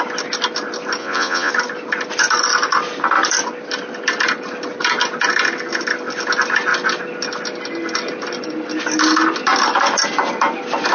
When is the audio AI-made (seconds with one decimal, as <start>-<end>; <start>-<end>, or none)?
1.0-1.5